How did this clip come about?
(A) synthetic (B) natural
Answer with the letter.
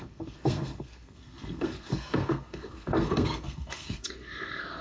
A